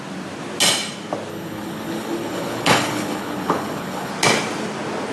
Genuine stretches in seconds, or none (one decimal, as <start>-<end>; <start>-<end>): 0.0-1.3; 4.1-5.1